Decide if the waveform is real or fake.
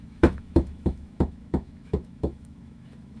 fake